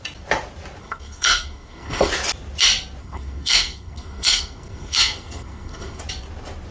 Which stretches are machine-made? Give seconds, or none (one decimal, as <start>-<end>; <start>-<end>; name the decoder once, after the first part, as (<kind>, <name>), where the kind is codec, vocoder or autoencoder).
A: 0.8-2.1 (codec, SNAC); 3.0-6.0